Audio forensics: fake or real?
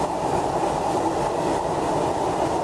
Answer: real